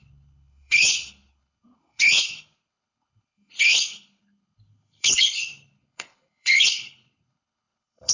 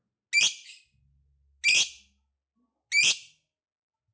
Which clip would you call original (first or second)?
second